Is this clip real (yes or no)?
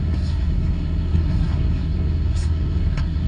no